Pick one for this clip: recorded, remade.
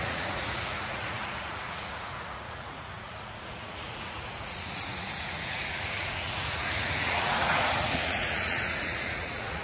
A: remade